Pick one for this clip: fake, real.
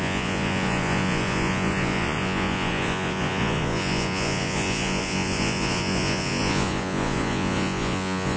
fake